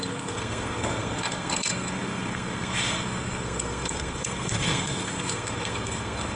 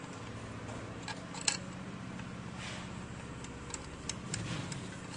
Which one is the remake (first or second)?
first